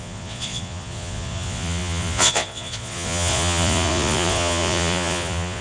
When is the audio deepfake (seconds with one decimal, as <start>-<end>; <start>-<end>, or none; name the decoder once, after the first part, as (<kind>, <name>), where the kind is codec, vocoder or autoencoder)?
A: 0.0-5.6 (vocoder, Vocos)